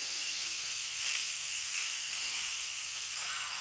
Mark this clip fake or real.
fake